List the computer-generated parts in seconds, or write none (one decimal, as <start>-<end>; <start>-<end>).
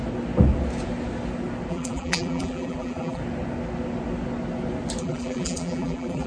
1.7-3.2; 5.0-6.3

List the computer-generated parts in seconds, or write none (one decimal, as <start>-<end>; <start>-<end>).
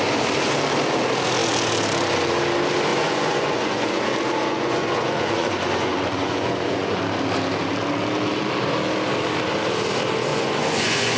2.9-4.0; 4.4-7.0; 10.3-11.2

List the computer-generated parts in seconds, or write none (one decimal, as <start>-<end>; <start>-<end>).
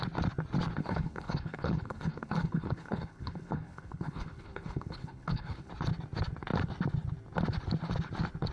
0.8-5.7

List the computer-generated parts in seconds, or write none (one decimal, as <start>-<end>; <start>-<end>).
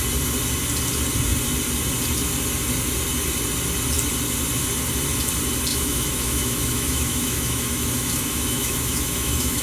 5.7-9.6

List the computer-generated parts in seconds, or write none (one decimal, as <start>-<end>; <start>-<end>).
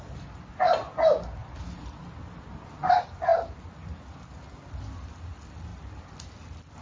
none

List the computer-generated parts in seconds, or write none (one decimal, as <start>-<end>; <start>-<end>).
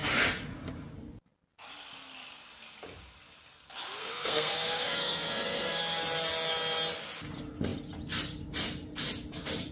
4.0-5.8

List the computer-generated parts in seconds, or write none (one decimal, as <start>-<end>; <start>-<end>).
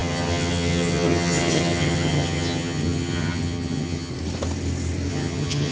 0.0-4.1; 5.1-5.7